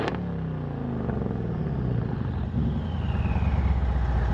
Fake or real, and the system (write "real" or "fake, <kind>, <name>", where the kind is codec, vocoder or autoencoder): real